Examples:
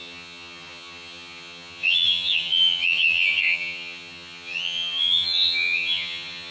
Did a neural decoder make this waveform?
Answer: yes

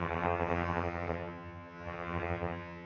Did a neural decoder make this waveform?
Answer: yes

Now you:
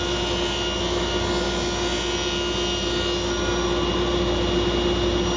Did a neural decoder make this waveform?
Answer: no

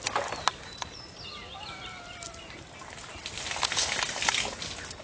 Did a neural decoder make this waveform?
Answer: no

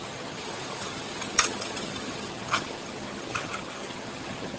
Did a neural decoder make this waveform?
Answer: yes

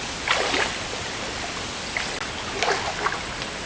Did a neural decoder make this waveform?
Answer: no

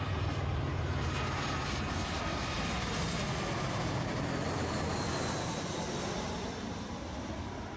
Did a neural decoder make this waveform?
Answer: no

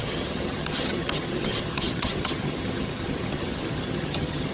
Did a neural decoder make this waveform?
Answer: yes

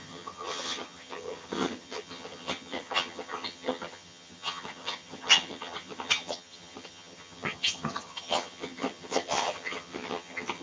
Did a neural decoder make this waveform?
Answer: yes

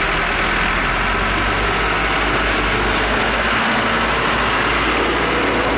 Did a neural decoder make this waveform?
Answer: no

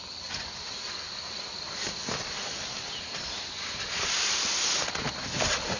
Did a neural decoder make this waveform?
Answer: no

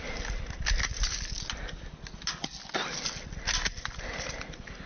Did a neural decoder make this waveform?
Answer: no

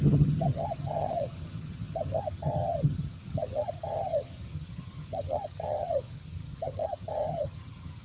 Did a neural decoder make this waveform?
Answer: yes